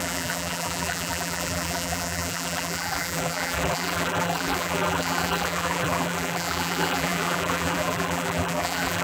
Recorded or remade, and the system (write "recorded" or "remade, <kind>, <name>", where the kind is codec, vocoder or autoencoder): remade, vocoder, BigVGAN v2